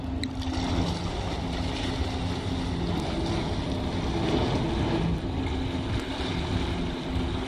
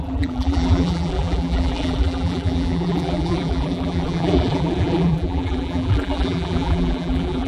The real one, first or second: first